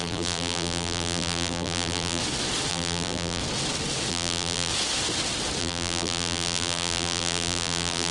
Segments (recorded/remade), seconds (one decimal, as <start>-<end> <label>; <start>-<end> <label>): 0.0-2.2 remade; 2.2-2.7 recorded; 2.7-3.4 remade; 3.4-4.1 recorded; 4.1-4.7 remade; 4.7-5.6 recorded; 5.6-8.1 remade